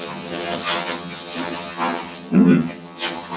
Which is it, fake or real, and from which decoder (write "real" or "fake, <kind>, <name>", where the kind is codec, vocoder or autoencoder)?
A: fake, vocoder, HiFi-GAN